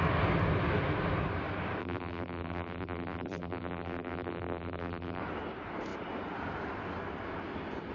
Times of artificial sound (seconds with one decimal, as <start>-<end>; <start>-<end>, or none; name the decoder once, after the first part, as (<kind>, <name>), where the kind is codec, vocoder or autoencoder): 1.8-5.2 (vocoder, BigVGAN v2)

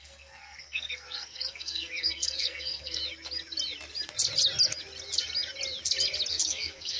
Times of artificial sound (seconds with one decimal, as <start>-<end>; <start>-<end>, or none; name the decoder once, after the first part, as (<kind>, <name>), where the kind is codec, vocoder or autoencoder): 0.0-3.0 (codec, SNAC); 6.3-7.0